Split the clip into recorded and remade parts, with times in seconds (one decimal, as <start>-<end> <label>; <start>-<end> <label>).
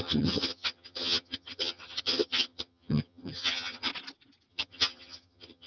0.0-3.9 remade; 3.9-4.5 recorded; 4.5-5.7 remade